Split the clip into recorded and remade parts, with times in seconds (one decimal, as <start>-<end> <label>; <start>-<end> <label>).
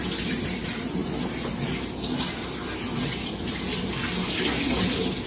0.0-5.3 recorded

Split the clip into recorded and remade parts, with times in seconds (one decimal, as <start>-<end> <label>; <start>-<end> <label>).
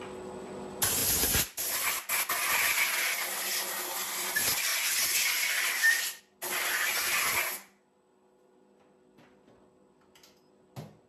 0.0-11.1 recorded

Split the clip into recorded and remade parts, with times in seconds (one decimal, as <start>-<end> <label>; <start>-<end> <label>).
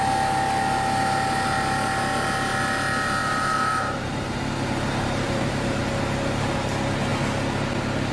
0.0-3.2 recorded; 3.2-5.8 remade; 5.8-8.1 recorded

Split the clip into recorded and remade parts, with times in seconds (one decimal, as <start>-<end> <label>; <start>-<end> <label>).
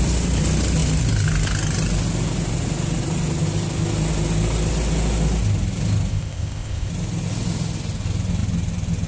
0.0-6.1 recorded; 6.1-6.9 remade; 6.9-9.1 recorded